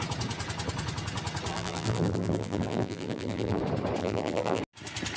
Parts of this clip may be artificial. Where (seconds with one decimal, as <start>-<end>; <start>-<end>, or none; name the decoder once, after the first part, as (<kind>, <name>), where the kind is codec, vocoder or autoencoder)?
1.5-3.6 (vocoder, BigVGAN v2); 4.0-4.6